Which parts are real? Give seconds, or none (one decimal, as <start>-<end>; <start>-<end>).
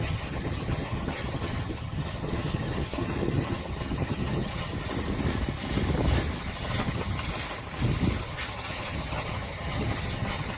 4.7-6.4; 7.3-8.2